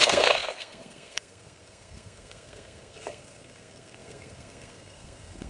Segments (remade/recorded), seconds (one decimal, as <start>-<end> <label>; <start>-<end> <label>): 0.0-5.5 remade